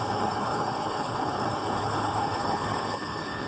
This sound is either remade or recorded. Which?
remade